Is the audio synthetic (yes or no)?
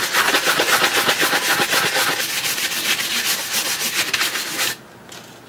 no